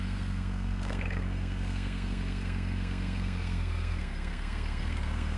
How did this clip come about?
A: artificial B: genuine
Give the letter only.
A